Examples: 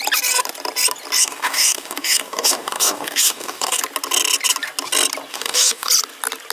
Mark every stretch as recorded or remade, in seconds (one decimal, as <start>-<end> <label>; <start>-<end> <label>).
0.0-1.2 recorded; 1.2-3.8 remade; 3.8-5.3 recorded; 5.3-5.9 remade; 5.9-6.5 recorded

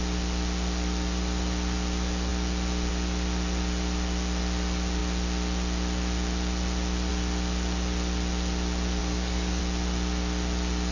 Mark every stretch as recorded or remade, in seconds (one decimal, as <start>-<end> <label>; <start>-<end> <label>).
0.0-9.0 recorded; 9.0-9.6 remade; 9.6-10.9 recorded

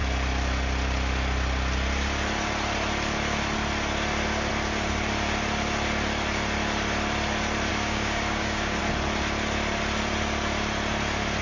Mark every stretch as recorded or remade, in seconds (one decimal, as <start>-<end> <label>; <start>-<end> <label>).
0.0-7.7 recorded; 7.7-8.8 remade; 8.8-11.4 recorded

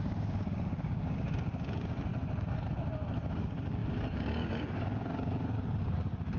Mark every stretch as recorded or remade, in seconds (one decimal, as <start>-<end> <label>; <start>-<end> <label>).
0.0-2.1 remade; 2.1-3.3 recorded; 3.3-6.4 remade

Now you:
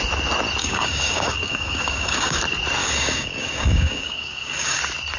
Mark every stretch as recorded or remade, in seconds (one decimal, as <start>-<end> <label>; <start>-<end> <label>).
0.0-0.6 recorded; 0.6-2.4 remade; 2.4-2.8 recorded; 2.8-4.8 remade; 4.8-5.2 recorded

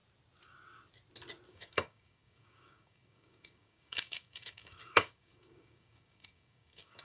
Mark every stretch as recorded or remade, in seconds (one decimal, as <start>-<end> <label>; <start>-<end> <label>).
0.0-1.5 recorded; 1.5-7.0 remade

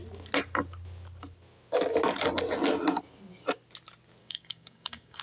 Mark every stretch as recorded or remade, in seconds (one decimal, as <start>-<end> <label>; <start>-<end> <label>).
0.0-4.2 recorded; 4.2-5.2 remade

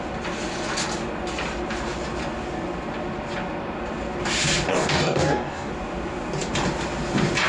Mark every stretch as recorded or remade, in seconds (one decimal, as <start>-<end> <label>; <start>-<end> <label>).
0.0-4.7 recorded; 4.7-5.7 remade; 5.7-7.5 recorded